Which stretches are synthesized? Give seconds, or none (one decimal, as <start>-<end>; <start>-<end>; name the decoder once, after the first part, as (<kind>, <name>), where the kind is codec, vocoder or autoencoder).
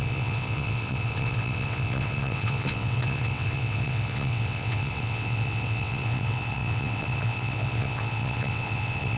0.0-9.2 (vocoder, WaveNeXt)